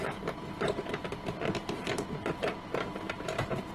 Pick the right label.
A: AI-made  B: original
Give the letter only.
B